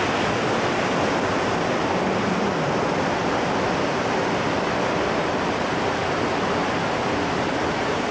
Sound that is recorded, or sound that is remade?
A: recorded